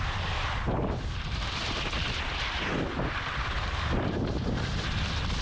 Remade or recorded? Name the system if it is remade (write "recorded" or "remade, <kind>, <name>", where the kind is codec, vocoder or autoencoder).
recorded